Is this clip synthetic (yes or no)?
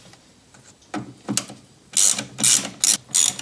no